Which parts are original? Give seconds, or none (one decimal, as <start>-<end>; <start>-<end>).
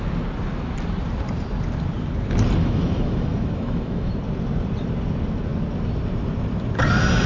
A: 0.0-2.6; 4.1-7.3